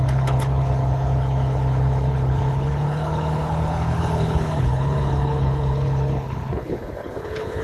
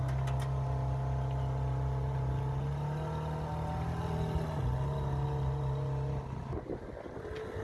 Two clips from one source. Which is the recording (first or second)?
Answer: second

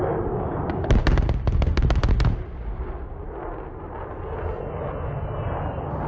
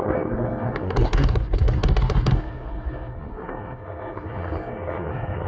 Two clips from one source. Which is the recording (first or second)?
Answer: first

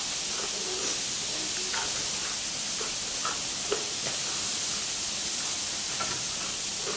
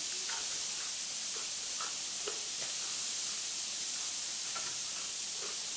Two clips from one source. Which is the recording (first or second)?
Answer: first